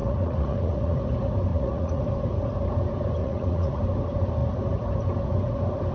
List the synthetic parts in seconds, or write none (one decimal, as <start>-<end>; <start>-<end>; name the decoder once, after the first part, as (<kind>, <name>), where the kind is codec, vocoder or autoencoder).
0.0-1.0 (vocoder, Vocos); 1.5-2.0; 3.2-3.8